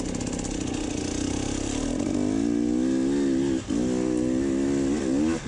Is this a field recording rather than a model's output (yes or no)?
yes